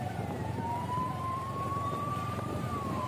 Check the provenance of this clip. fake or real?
fake